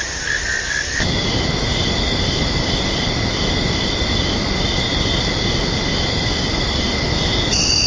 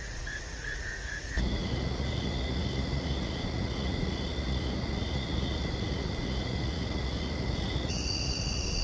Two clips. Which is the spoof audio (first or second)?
second